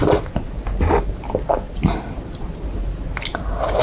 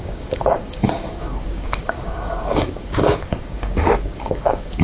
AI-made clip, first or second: second